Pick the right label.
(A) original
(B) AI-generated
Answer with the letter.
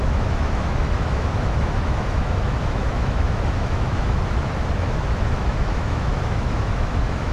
B